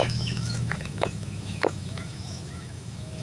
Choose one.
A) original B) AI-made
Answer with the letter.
B